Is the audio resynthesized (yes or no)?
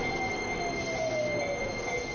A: no